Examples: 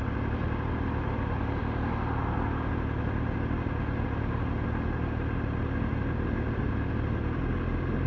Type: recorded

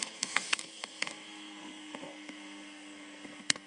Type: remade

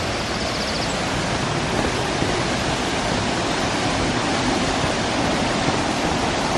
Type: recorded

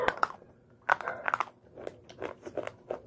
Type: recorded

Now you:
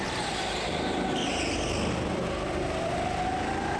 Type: recorded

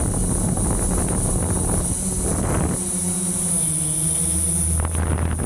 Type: recorded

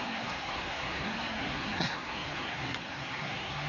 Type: remade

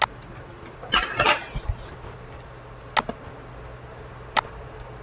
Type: recorded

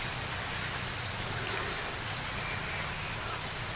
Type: recorded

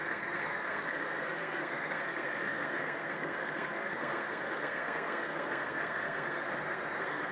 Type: remade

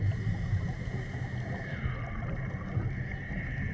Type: recorded